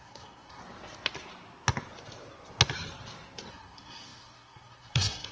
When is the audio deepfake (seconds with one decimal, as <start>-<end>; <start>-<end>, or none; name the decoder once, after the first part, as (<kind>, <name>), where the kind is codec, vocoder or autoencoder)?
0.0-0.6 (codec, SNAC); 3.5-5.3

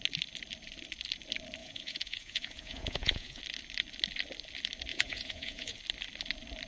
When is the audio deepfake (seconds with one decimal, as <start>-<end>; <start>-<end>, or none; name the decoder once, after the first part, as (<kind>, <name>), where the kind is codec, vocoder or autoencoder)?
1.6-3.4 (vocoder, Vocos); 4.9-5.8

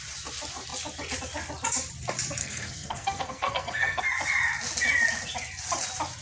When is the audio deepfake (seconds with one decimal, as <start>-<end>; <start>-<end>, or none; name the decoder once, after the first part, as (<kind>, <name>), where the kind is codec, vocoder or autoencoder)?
2.4-4.0 (codec, SNAC)

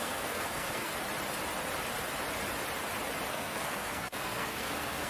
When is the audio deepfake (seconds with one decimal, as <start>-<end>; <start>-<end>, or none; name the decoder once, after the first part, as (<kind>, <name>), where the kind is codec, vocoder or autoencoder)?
0.0-0.9 (codec, SNAC); 3.3-5.1